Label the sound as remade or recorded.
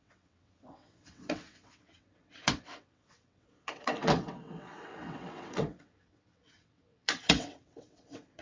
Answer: remade